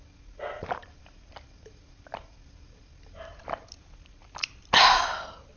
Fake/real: real